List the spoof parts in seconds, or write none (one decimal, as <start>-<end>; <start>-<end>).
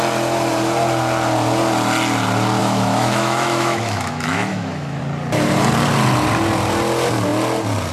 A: 2.6-5.0